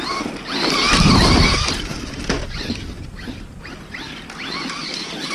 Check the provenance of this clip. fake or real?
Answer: real